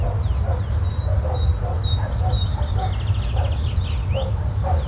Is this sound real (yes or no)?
yes